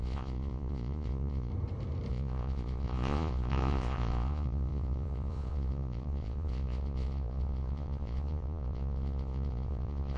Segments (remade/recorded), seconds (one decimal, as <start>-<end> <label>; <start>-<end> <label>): 0.0-1.5 remade; 1.5-2.1 recorded; 2.1-10.2 remade